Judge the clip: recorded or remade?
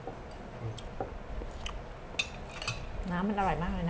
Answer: recorded